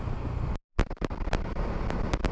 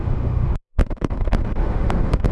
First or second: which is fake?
second